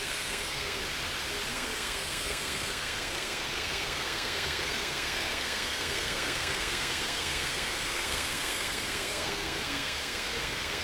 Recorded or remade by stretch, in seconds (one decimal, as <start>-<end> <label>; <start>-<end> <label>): 0.0-0.8 remade; 0.8-1.5 recorded; 1.5-10.8 remade